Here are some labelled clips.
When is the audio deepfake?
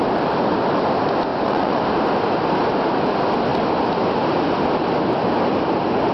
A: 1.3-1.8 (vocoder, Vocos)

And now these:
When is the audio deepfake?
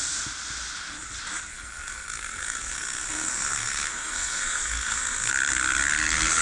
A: 1.5-5.3 (codec, SNAC)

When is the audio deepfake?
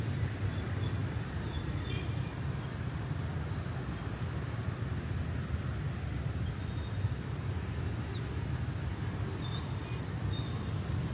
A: none